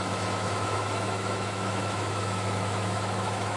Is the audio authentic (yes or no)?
no